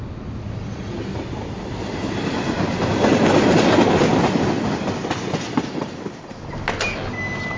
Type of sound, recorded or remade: recorded